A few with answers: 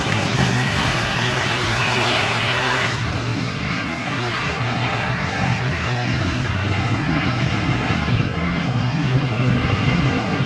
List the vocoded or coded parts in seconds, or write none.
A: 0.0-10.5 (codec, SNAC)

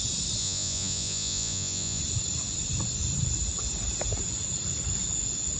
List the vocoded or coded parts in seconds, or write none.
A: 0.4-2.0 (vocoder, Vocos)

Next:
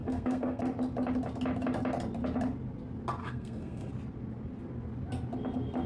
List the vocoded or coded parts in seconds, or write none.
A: 0.0-0.6 (codec, SNAC); 3.2-3.9